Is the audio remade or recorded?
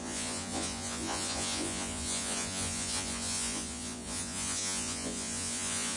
remade